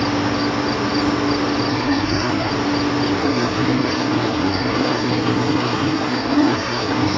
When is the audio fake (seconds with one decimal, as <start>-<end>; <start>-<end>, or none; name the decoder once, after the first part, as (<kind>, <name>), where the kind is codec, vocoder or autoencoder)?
1.7-2.5 (codec, SNAC); 3.2-7.2